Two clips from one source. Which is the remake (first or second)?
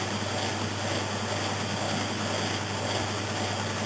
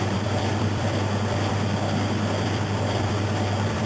second